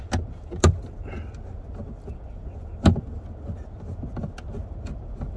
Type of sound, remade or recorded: recorded